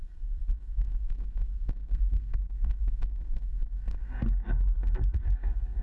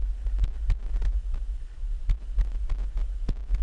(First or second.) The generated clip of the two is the first